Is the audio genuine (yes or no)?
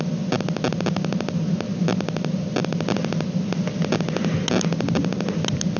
yes